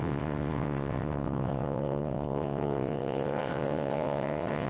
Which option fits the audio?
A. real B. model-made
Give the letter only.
B